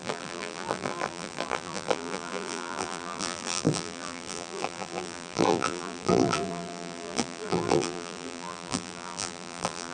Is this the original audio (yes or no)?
no